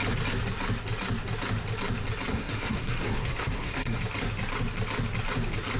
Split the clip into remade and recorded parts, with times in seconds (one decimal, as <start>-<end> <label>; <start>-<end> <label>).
0.0-2.3 recorded; 2.3-4.0 remade; 4.0-5.8 recorded